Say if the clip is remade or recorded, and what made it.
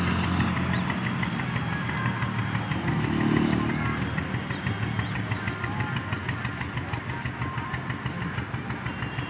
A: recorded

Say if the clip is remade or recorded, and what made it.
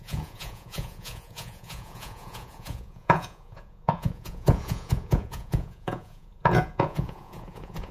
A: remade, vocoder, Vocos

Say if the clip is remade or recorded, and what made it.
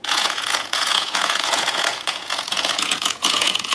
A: remade, vocoder, Vocos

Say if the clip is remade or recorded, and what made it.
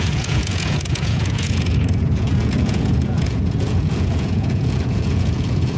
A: remade, vocoder, Vocos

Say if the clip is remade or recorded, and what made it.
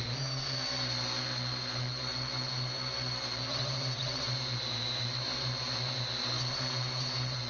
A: recorded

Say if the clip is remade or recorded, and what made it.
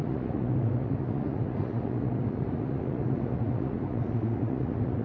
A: remade, vocoder, Vocos